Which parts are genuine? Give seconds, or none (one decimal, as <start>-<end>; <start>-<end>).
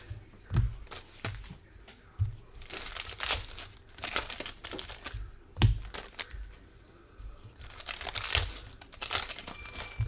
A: 0.0-10.1